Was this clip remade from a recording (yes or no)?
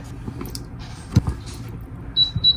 no